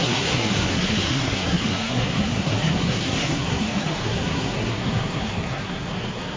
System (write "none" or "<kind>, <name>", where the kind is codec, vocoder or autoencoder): codec, SNAC